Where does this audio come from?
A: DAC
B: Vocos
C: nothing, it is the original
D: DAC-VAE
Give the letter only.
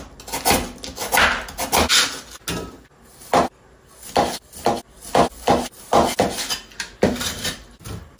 C